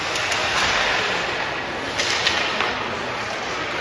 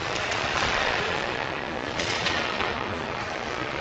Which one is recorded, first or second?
first